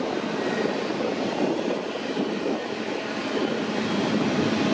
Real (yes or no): yes